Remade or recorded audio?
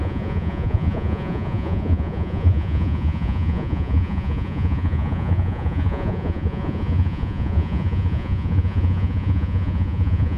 remade